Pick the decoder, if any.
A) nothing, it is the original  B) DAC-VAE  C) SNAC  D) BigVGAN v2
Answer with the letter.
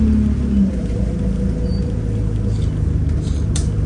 A